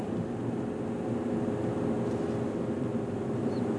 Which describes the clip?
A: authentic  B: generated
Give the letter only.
A